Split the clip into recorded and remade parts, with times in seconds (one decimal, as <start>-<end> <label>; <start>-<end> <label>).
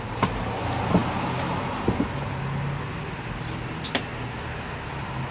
0.0-5.3 recorded